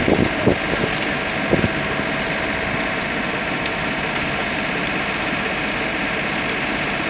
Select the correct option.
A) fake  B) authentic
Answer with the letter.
B